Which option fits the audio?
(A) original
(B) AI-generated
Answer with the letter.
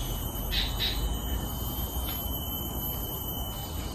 A